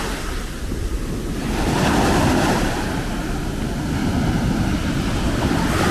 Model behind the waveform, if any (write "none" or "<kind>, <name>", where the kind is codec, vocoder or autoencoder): none